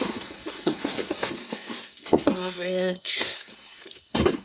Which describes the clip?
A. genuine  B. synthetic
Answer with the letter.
B